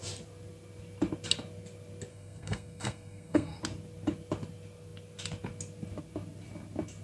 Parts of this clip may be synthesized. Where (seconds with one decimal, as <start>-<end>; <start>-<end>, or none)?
2.1-3.6